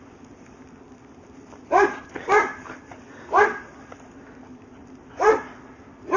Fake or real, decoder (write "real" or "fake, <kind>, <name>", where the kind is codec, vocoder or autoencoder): real